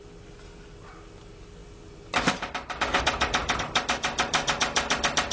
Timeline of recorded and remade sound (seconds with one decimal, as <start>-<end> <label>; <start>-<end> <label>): 0.0-5.3 recorded